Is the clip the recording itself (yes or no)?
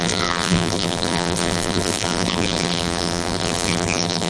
no